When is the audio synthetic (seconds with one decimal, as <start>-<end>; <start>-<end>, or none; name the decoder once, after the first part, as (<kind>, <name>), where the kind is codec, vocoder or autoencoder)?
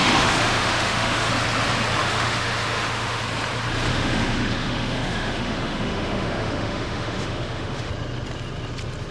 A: 0.0-1.3 (autoencoder, DAC-VAE); 2.0-3.2; 3.9-7.9